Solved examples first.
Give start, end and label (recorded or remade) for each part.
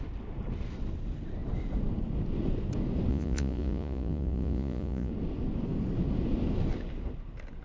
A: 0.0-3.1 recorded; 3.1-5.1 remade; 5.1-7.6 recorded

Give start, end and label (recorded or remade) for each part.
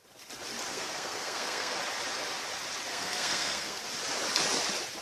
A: 0.0-0.7 recorded; 0.7-1.8 remade; 1.8-2.9 recorded; 2.9-3.8 remade; 3.8-5.0 recorded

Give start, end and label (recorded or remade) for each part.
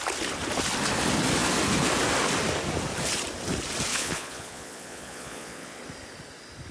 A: 0.0-3.9 recorded; 3.9-5.8 remade; 5.8-6.7 recorded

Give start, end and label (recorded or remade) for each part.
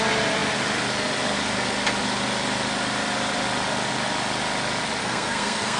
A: 0.0-5.0 recorded; 5.0-5.8 remade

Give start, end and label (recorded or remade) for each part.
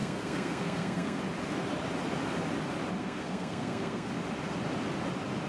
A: 0.0-1.2 remade; 1.2-3.0 recorded; 3.0-4.1 remade; 4.1-5.5 recorded